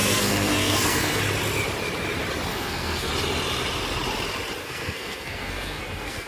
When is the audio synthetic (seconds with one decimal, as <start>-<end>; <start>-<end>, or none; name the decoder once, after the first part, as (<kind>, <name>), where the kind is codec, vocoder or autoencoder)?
0.0-1.2 (codec, SNAC); 2.5-3.1; 4.6-6.3